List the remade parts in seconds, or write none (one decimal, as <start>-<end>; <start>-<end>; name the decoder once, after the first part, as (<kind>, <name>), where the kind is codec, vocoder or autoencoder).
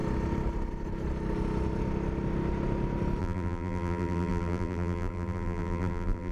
3.2-6.3 (vocoder, BigVGAN v2)